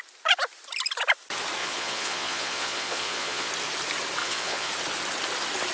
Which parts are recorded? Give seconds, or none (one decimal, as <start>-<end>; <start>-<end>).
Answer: 0.0-1.6; 3.5-4.2; 4.7-5.7